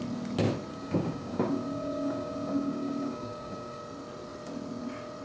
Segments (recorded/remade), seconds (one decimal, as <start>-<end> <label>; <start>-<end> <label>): 0.0-0.7 recorded; 0.7-3.8 remade; 3.8-5.2 recorded